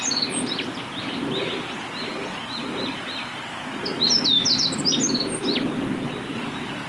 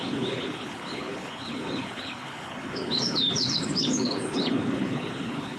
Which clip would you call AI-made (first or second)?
second